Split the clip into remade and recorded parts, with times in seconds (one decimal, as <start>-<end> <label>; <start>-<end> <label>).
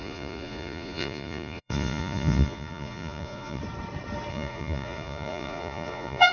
0.0-3.6 remade; 3.6-4.3 recorded; 4.3-6.3 remade